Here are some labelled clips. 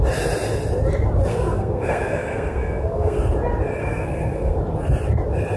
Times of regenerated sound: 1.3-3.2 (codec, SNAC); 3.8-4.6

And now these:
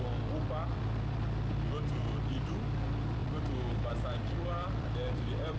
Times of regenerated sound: 0.0-5.6 (vocoder, BigVGAN v2)

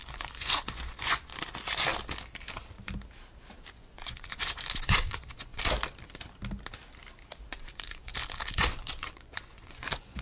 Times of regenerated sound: 0.0-1.3 (vocoder, Vocos); 3.7-5.5; 7.5-8.1; 8.6-10.2

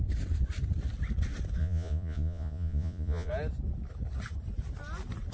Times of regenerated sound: 1.6-3.3 (vocoder, Vocos)

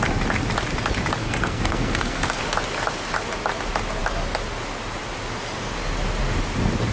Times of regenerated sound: 1.2-2.4 (codec, SNAC)

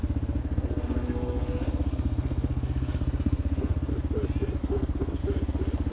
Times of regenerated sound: 0.4-3.9 (codec, SNAC); 4.6-5.2